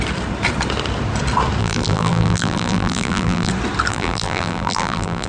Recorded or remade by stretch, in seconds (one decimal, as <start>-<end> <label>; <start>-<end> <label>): 0.0-1.6 recorded; 1.6-3.5 remade; 3.5-3.9 recorded; 3.9-5.3 remade